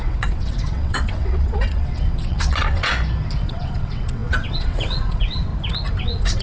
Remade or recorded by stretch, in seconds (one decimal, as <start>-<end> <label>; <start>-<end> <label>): 0.0-2.9 remade; 2.9-3.5 recorded; 3.5-5.5 remade; 5.5-6.0 recorded; 6.0-6.4 remade